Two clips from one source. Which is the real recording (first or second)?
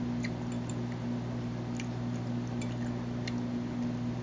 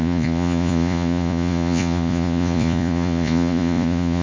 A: first